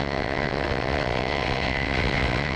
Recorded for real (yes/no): no